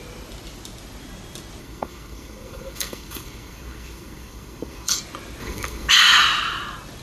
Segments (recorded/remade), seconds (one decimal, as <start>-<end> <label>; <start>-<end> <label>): 0.0-1.6 recorded; 1.6-5.0 remade; 5.0-5.4 recorded; 5.4-5.9 remade; 5.9-7.0 recorded